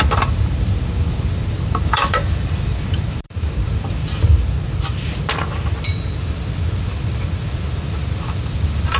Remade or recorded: remade